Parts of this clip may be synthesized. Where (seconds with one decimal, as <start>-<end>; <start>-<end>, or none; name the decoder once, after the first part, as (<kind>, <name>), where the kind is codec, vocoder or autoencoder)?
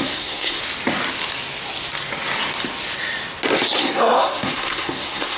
0.0-0.6 (codec, SNAC); 3.8-5.4